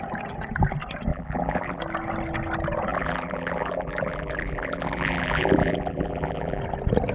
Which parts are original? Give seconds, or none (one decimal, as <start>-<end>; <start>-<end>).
0.0-1.1; 1.8-2.9; 6.6-7.1